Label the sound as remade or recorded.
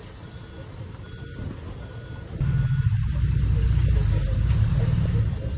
recorded